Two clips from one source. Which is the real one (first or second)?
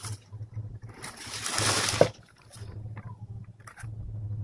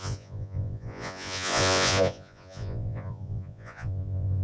first